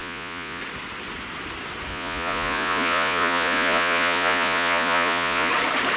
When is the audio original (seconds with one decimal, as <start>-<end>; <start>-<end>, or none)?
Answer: 0.6-1.9; 5.5-6.0

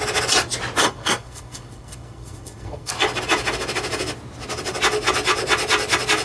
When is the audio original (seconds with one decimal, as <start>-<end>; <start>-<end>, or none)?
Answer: 0.0-0.8; 2.9-6.2

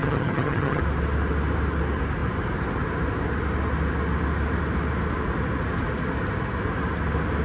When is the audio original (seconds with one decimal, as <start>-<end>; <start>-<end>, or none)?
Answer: 0.8-7.4

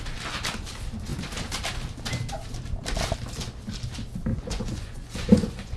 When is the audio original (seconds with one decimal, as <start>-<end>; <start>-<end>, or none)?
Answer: 0.0-4.3

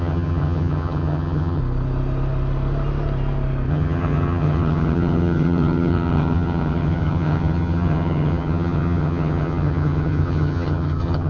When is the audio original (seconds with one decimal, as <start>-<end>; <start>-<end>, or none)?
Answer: 1.6-3.7